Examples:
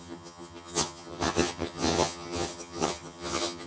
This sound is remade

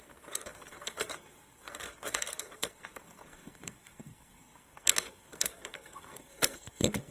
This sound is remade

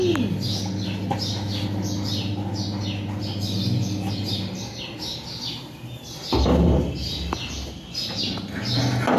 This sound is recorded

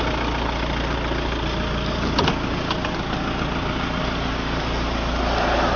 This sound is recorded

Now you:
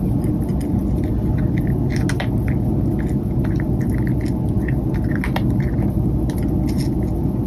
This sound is recorded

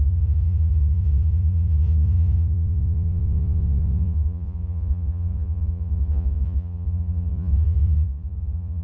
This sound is remade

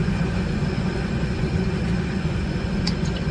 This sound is remade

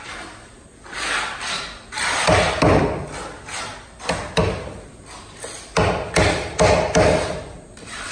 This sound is recorded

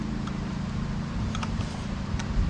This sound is remade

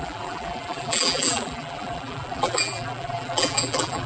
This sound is remade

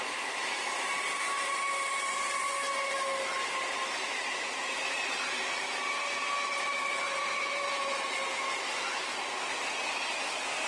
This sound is recorded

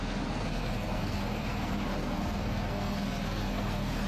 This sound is remade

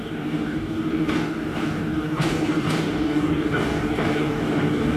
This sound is remade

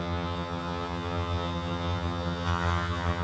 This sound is remade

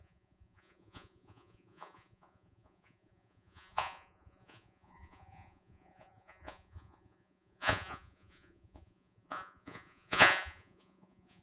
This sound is remade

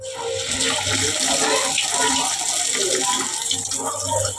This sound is recorded